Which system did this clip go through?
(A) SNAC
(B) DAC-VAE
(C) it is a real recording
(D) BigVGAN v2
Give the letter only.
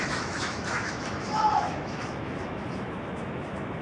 B